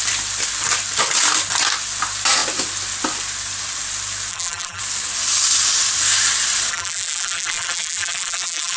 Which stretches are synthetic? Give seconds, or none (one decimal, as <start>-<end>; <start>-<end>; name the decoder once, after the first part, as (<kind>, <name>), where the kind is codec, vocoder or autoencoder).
4.3-4.8 (vocoder, BigVGAN v2); 6.7-8.8